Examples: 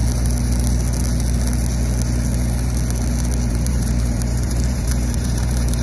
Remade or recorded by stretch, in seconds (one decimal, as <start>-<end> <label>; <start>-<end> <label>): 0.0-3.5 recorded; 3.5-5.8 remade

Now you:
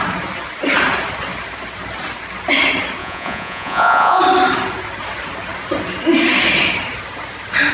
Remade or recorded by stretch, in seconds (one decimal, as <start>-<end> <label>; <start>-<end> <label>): 0.0-3.0 recorded; 3.0-4.2 remade; 4.2-7.7 recorded

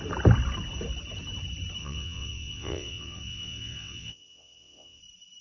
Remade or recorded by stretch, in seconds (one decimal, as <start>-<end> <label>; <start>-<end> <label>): 0.0-1.8 recorded; 1.8-5.0 remade; 5.0-5.4 recorded

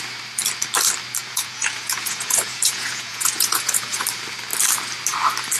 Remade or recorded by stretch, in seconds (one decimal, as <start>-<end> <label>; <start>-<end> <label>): 0.0-1.2 recorded; 1.2-4.0 remade; 4.0-5.6 recorded

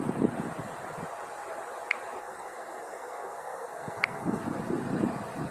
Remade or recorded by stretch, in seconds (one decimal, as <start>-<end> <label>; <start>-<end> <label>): 0.0-2.2 recorded; 2.2-4.4 remade; 4.4-5.5 recorded

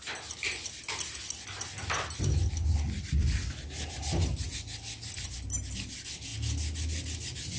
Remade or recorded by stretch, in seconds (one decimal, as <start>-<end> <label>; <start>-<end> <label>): 0.0-7.6 recorded